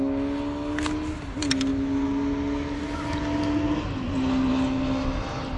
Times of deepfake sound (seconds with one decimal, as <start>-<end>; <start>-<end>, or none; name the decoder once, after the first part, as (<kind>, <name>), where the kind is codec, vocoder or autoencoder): none